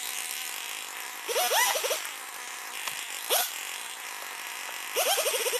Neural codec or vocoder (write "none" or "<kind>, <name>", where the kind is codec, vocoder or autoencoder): none